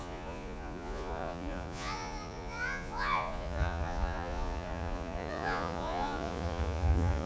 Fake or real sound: fake